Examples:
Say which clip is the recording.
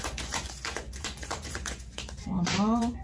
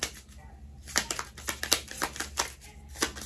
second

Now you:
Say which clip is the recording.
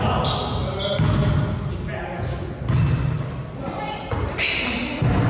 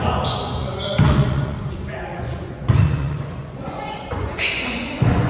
first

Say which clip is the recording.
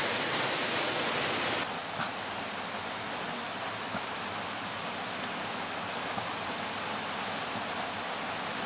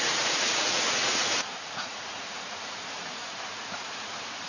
first